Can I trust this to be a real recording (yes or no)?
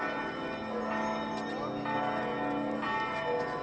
yes